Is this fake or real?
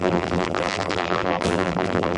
fake